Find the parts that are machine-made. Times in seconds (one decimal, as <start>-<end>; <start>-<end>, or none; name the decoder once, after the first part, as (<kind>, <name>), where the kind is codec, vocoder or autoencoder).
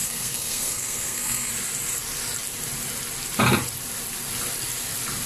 0.0-1.5 (codec, SNAC)